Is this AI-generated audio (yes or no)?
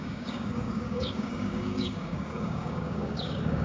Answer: yes